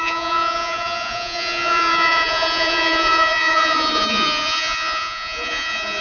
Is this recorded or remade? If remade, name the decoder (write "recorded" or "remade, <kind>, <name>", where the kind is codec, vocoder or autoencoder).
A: remade, vocoder, Vocos